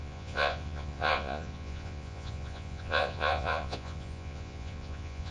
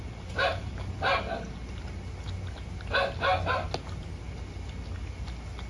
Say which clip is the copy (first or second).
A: first